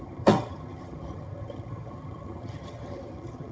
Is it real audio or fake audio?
fake